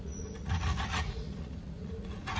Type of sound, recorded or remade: remade